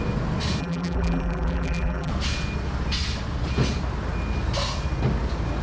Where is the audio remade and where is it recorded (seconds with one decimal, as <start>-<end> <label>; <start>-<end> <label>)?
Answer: 0.0-0.6 recorded; 0.6-2.1 remade; 2.1-5.6 recorded